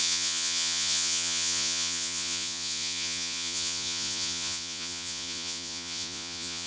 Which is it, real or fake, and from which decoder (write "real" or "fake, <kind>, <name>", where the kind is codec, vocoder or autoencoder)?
fake, vocoder, Vocos